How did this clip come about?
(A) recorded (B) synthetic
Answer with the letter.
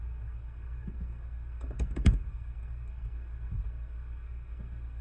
B